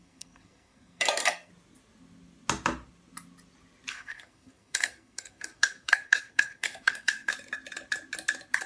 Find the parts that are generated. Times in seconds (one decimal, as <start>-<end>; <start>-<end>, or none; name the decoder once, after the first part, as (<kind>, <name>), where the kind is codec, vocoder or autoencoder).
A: 0.0-1.5 (codec, SNAC); 3.9-7.3